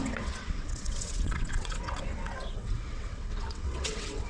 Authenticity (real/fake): fake